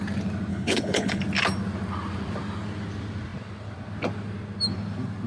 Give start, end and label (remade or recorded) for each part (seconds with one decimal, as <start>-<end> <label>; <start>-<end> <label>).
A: 0.0-0.5 recorded; 0.5-1.2 remade; 1.2-5.3 recorded